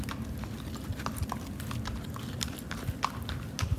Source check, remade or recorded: recorded